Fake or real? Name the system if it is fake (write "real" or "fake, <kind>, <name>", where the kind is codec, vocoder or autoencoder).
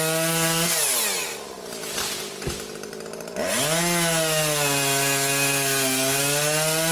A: real